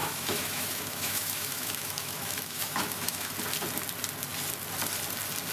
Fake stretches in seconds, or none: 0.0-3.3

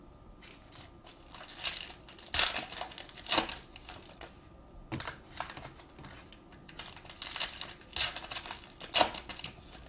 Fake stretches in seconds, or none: none

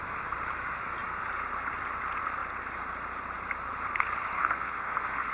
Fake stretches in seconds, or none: 4.4-5.3

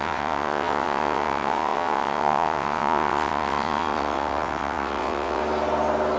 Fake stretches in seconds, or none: 0.0-5.4